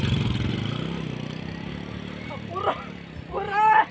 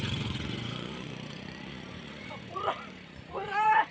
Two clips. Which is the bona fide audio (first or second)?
first